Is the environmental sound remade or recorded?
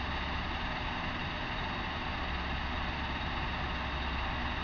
recorded